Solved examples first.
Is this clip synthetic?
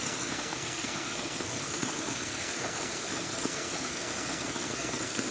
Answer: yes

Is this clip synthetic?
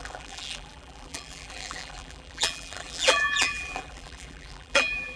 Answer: yes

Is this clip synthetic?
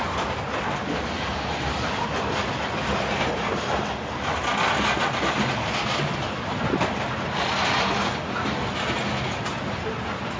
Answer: no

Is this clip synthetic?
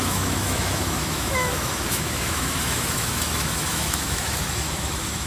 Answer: yes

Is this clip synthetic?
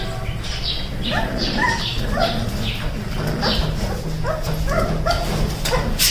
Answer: no